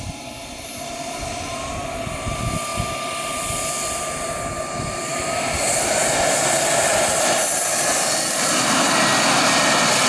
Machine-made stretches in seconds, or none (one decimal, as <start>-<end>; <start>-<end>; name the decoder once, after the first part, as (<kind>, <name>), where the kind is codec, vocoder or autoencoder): none